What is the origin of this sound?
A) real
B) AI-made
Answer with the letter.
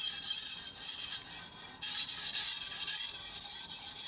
A